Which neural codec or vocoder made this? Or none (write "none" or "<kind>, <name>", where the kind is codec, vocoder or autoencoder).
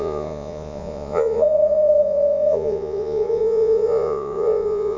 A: vocoder, Vocos